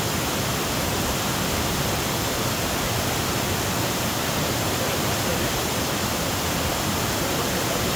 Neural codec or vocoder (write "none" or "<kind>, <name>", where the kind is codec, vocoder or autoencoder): none